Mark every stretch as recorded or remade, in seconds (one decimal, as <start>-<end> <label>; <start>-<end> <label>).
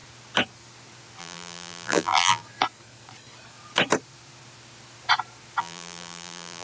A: 0.0-1.2 recorded; 1.2-2.4 remade; 2.4-5.6 recorded; 5.6-6.6 remade